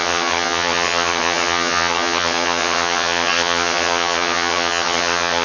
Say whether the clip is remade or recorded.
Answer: remade